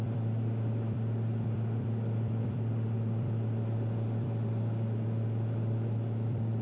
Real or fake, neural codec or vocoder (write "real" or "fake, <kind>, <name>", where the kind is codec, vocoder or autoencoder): fake, vocoder, BigVGAN v2